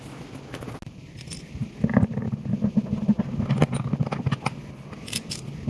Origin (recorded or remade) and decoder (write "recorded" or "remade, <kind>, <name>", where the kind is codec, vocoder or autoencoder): recorded